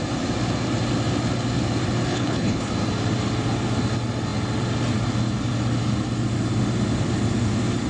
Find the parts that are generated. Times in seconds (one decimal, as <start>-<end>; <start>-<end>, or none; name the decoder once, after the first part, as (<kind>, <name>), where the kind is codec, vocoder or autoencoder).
2.1-2.7 (codec, HILCodec)